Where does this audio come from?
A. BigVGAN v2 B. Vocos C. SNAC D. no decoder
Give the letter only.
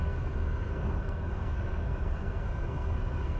C